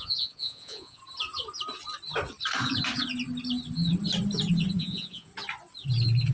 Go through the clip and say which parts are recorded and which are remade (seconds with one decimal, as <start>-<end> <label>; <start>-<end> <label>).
0.0-1.0 remade; 1.0-4.8 recorded; 4.8-5.3 remade; 5.3-6.3 recorded